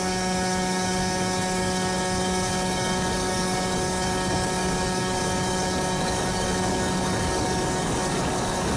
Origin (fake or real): fake